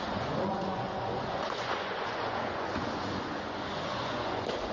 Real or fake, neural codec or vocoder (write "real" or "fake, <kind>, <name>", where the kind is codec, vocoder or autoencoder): fake, vocoder, Vocos